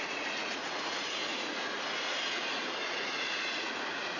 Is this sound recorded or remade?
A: remade